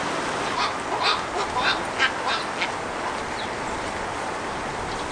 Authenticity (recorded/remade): recorded